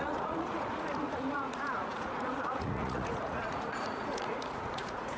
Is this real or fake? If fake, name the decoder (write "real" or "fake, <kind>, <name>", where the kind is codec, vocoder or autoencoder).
fake, vocoder, Vocos